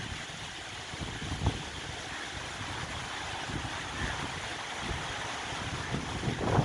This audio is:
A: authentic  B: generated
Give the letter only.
A